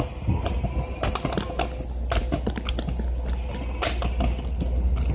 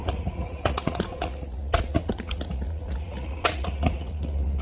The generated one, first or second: second